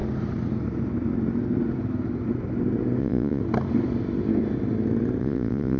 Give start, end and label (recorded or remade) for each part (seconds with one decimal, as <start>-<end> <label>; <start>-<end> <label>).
0.0-3.0 recorded; 3.0-3.4 remade; 3.4-5.2 recorded; 5.2-5.8 remade

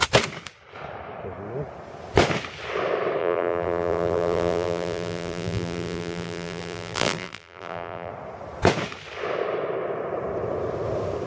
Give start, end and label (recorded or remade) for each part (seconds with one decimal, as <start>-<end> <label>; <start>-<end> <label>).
0.0-3.2 recorded; 3.2-8.1 remade; 8.1-11.3 recorded

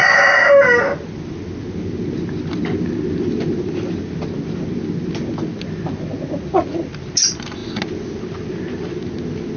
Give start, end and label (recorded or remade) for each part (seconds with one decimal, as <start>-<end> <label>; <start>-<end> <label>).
0.0-9.6 recorded

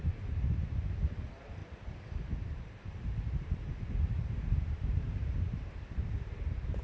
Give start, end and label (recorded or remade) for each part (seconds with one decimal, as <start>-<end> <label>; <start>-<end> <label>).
0.0-1.6 remade; 1.6-2.3 recorded; 2.3-6.8 remade

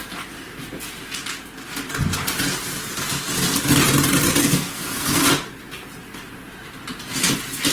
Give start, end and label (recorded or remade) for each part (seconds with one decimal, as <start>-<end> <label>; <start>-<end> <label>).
0.0-4.4 recorded; 4.4-5.3 remade; 5.3-7.7 recorded

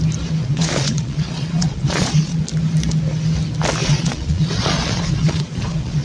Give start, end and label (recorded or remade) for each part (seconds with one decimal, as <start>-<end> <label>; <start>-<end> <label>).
0.0-0.4 recorded; 0.4-2.4 remade; 2.4-3.8 recorded; 3.8-6.0 remade